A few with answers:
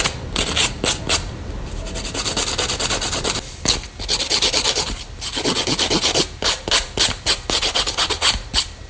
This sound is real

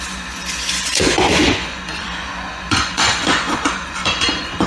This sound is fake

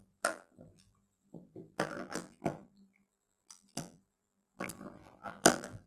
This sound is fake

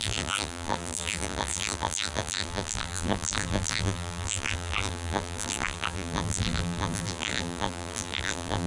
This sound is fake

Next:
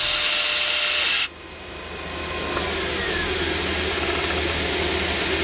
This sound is real